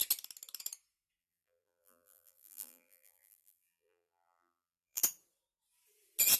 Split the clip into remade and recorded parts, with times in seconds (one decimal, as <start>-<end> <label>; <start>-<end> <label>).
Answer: 0.0-1.2 recorded; 1.2-5.0 remade; 5.0-6.4 recorded

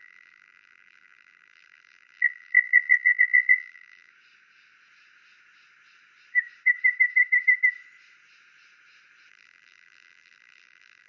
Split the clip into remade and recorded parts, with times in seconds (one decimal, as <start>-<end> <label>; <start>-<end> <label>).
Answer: 0.0-4.1 remade; 4.1-9.3 recorded; 9.3-11.1 remade

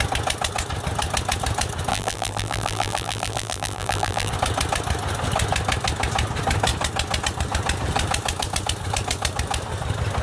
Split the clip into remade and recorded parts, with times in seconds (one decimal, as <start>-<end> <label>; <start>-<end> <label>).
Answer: 0.0-1.9 recorded; 1.9-4.3 remade; 4.3-10.2 recorded

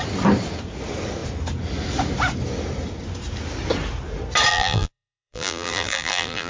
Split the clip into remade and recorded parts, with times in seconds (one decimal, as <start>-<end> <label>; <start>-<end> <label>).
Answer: 0.0-4.5 recorded; 4.5-6.5 remade

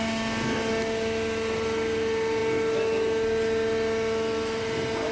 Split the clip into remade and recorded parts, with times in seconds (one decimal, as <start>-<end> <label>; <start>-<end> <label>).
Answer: 0.0-5.1 recorded